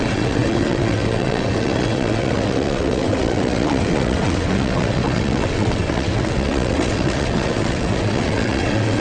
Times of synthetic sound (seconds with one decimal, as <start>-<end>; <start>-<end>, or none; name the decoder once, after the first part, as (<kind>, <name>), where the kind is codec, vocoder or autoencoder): 0.0-9.0 (vocoder, WaveNeXt)